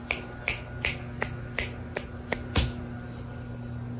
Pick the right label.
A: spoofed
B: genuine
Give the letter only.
B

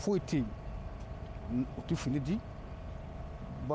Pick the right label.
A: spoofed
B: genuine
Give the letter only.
B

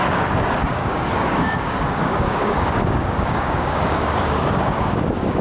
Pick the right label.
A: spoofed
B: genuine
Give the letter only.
A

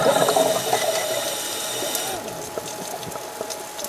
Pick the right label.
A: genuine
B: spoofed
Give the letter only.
A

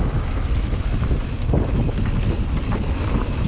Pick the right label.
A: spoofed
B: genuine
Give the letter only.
B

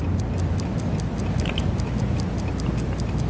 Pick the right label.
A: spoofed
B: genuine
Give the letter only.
B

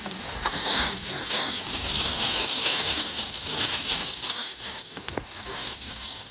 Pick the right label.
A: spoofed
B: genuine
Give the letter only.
A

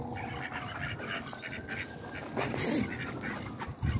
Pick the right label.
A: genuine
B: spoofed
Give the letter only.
A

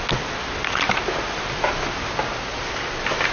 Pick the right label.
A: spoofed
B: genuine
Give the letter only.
B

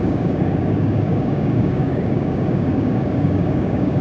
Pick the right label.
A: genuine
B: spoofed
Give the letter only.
B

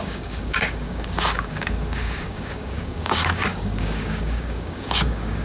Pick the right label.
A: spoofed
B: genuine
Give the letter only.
A